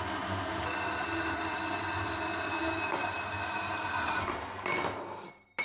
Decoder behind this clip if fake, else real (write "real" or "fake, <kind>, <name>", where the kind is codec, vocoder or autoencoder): real